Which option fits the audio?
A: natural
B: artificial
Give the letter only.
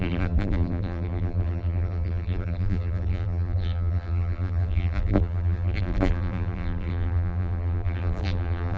B